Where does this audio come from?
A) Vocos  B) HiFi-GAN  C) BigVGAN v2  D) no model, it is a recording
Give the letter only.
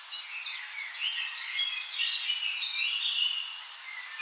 D